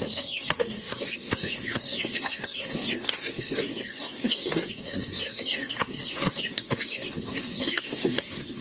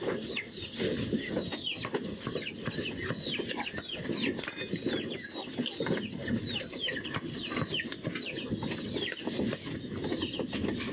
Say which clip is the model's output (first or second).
first